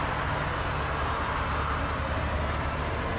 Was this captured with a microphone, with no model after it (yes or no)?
yes